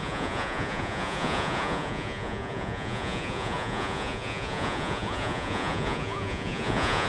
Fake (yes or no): yes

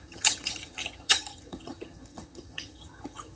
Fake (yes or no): yes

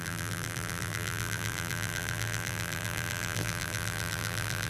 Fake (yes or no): yes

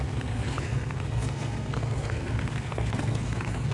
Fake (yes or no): yes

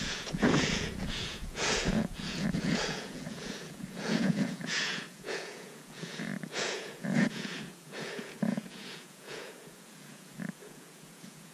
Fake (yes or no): yes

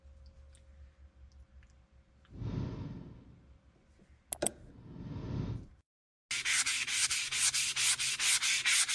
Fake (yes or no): no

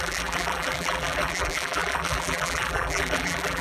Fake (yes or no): yes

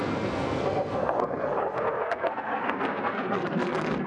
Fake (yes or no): yes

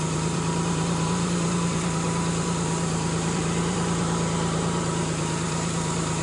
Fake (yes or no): yes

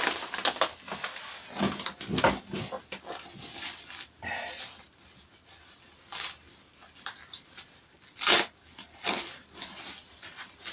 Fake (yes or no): no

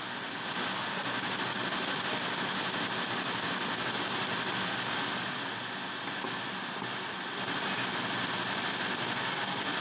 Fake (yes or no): no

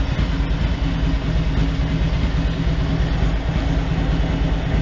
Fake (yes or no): no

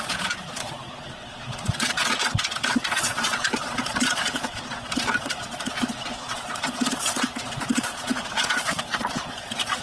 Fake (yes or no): yes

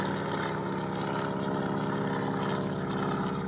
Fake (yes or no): no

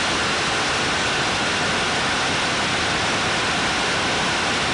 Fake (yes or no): no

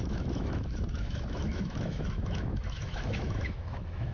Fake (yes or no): yes